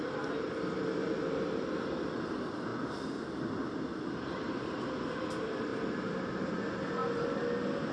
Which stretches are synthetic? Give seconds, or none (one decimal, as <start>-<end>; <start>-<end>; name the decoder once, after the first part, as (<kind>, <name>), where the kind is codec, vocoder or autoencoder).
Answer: 0.0-2.7 (vocoder, BigVGAN v2); 3.7-7.0